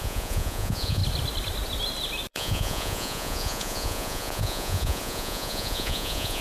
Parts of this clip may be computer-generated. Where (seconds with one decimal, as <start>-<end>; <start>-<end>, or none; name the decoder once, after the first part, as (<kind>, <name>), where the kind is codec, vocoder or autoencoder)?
0.0-1.0 (vocoder, Vocos); 2.3-6.4